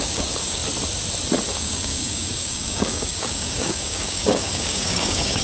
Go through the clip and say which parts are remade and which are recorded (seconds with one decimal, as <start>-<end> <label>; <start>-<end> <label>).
0.0-0.6 remade; 0.6-1.5 recorded; 1.5-5.4 remade